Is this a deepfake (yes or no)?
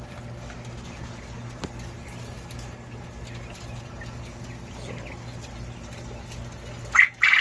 no